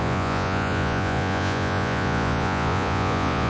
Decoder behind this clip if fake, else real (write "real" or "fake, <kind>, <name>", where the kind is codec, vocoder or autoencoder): fake, vocoder, Vocos